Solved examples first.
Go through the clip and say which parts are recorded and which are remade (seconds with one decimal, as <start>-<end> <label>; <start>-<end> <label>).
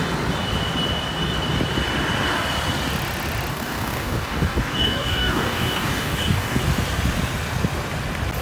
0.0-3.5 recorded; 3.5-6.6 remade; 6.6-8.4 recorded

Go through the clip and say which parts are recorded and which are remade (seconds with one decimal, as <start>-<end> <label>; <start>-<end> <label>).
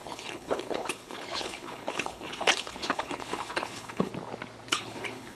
0.0-4.1 remade; 4.1-4.7 recorded; 4.7-5.3 remade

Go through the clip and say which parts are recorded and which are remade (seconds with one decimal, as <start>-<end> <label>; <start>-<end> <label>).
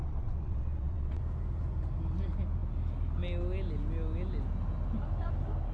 0.0-1.2 remade; 1.2-5.7 recorded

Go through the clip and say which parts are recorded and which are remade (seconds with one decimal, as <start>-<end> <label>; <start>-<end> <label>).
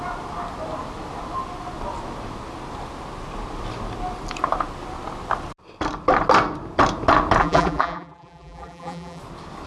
0.0-7.4 recorded; 7.4-9.2 remade; 9.2-9.7 recorded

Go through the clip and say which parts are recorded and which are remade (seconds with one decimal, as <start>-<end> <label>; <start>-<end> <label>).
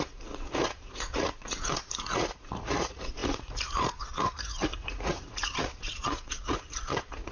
0.0-7.3 remade